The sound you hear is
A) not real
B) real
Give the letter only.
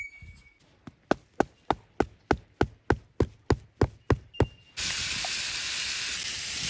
B